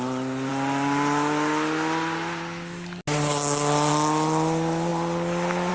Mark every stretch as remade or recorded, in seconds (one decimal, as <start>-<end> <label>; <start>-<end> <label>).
0.0-5.7 recorded